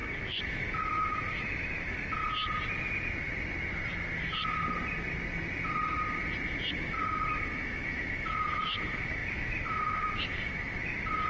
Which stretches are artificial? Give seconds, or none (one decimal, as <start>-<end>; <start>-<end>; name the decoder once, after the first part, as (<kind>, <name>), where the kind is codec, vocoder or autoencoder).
0.0-2.2 (autoencoder, DAC-VAE); 6.7-11.3

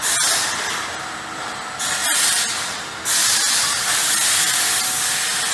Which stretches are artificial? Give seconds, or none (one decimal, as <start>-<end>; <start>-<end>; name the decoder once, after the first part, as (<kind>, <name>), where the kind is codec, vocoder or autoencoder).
2.0-2.8 (vocoder, BigVGAN v2); 3.2-4.8